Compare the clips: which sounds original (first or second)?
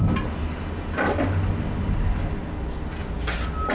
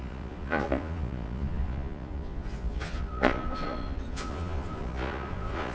first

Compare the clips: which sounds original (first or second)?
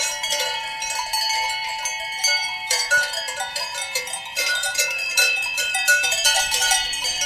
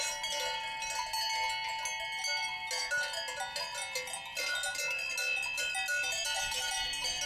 second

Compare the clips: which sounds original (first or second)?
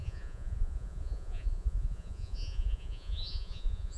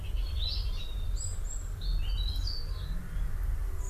second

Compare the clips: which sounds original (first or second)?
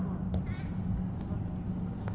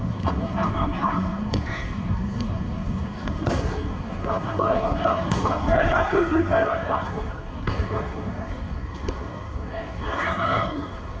first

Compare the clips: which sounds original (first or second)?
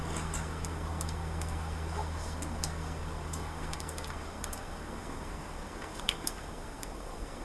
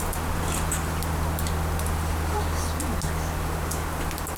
second